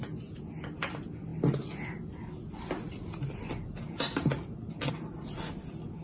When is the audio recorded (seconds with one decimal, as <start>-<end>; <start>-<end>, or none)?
0.0-6.0